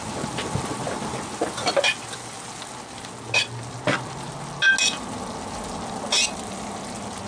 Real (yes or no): yes